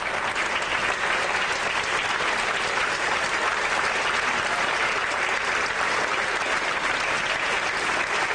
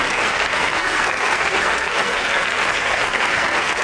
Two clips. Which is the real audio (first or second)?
first